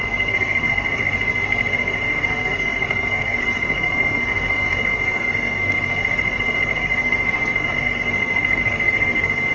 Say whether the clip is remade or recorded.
remade